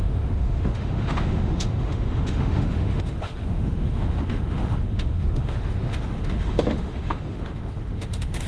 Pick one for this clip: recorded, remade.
remade